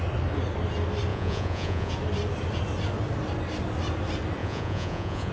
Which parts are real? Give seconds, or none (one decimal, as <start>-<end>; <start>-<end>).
0.0-1.1; 1.9-4.4